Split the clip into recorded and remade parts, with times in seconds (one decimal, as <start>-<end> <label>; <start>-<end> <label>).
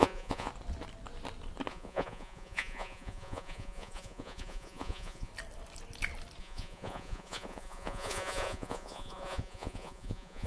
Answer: 0.0-0.5 remade; 0.5-1.7 recorded; 1.7-5.3 remade; 5.3-6.4 recorded; 6.4-10.5 remade